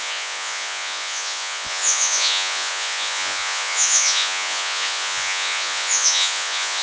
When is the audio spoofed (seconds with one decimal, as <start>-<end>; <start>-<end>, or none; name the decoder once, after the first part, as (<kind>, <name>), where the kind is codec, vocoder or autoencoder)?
0.0-6.8 (vocoder, Vocos)